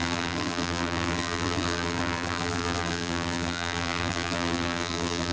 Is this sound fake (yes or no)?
yes